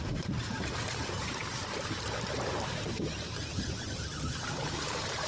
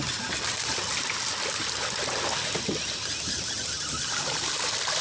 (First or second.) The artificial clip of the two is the first